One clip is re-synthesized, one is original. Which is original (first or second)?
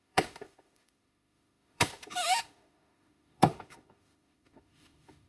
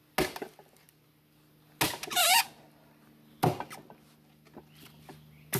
second